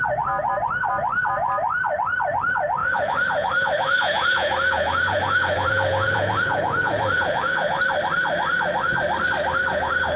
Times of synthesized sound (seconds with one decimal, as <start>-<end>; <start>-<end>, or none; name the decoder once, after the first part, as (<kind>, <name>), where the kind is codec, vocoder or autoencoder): 2.8-7.8 (vocoder, Vocos); 9.7-10.2